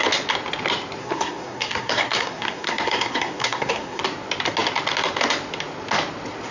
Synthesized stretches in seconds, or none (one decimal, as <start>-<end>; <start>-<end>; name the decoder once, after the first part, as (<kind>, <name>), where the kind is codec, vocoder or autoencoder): 1.0-4.0 (codec, SNAC)